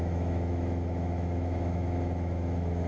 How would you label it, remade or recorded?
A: remade